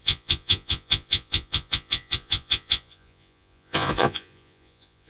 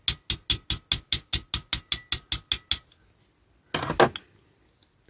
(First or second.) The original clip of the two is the second